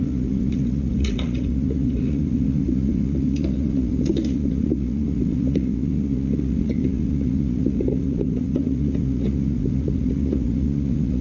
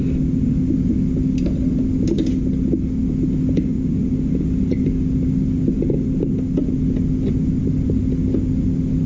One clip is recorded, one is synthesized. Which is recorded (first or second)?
second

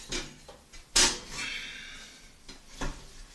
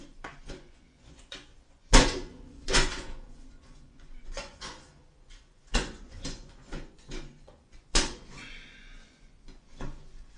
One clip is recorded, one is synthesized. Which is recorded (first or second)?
first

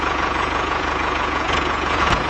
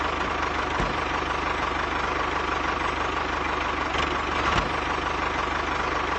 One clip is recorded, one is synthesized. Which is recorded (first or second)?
second